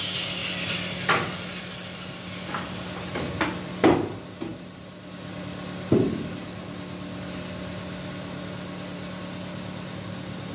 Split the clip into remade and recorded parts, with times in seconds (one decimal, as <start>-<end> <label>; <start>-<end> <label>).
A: 0.0-10.5 recorded